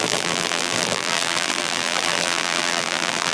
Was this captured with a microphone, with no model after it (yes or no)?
no